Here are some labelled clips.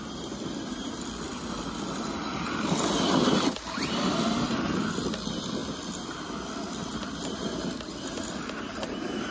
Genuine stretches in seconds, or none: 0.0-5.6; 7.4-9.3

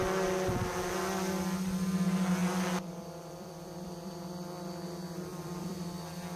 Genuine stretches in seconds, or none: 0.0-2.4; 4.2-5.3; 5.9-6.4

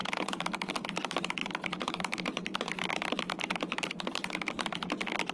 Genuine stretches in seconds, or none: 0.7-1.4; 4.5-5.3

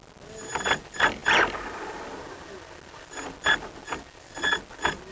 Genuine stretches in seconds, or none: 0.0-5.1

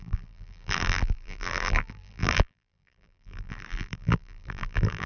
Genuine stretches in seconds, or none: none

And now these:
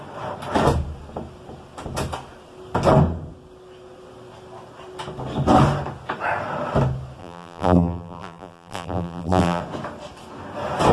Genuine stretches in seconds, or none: 0.0-7.2; 9.6-10.9

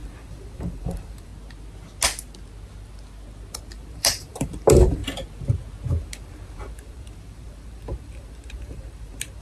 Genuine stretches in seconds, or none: 1.3-3.7; 5.0-6.0

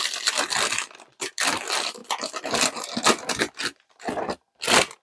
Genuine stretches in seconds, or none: 2.0-4.2